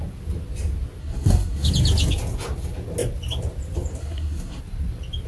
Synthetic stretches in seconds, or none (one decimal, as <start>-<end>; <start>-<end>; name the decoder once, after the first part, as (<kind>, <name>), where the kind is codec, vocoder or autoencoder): 1.0-1.7 (codec, SNAC); 4.0-4.6